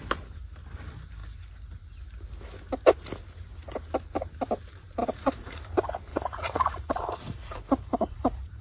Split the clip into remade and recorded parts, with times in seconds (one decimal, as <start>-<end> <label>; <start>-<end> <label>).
0.0-5.0 recorded; 5.0-5.6 remade; 5.6-6.1 recorded; 6.1-8.6 remade